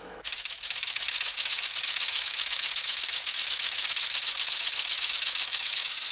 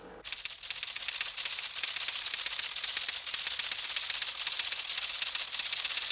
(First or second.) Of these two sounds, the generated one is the first